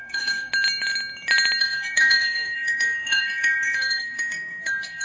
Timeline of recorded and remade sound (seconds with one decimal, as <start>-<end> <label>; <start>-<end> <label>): 0.0-0.5 remade; 0.5-1.6 recorded; 1.6-5.0 remade